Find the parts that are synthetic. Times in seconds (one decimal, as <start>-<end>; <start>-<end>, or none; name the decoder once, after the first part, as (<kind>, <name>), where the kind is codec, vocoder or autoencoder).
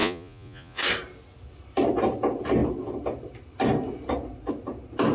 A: 0.0-0.8 (vocoder, Vocos)